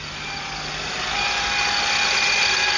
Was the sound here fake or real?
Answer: real